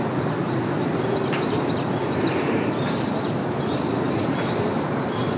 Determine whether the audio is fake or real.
real